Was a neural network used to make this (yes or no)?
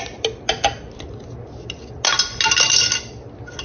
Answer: no